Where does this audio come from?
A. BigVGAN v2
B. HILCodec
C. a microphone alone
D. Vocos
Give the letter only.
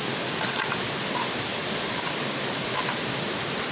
C